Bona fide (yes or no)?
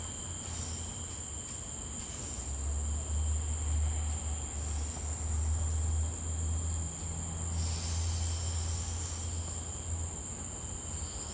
yes